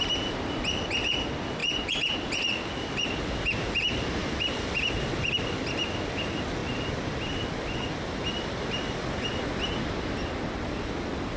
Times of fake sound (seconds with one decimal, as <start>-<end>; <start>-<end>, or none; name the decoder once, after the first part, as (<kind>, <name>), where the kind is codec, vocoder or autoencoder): none